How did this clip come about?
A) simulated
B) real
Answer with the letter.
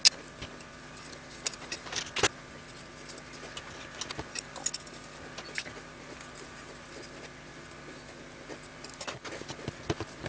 B